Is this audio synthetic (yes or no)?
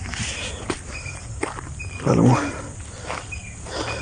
no